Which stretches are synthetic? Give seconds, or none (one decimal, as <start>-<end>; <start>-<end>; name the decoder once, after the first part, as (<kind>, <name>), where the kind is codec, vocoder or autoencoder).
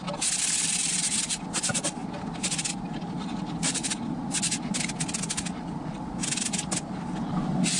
none